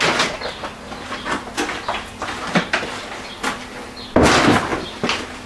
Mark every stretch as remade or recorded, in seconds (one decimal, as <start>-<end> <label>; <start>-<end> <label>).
0.0-4.7 recorded; 4.7-5.5 remade